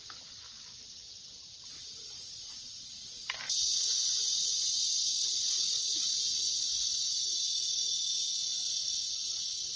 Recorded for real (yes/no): yes